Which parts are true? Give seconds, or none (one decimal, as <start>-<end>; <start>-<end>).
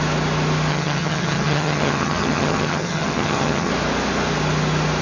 0.0-0.7; 3.7-5.0